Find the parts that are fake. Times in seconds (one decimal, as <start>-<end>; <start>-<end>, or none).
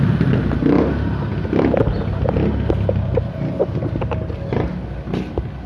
none